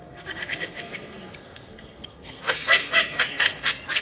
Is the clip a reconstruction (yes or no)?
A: yes